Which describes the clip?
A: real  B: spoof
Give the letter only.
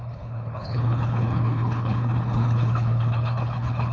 B